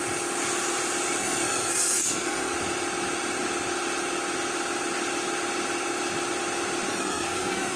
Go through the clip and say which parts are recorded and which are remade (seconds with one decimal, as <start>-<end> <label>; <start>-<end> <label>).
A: 0.0-1.2 recorded; 1.2-2.5 remade; 2.5-6.9 recorded; 6.9-7.8 remade